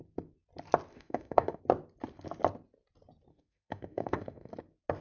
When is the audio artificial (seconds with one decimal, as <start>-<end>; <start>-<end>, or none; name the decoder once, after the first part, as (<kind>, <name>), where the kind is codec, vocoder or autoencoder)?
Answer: 0.9-1.6 (autoencoder, DAC-VAE); 3.3-4.5